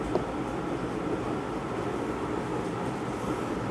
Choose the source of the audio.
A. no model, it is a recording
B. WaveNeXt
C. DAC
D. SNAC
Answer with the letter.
A